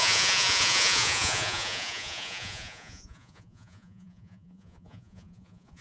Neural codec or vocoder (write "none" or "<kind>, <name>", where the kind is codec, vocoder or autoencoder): vocoder, Vocos